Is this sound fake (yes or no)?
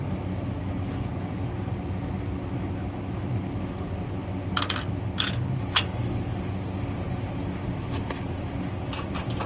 no